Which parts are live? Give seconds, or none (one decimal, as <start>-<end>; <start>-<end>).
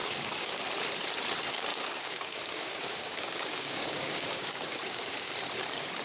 0.6-1.7; 5.3-6.0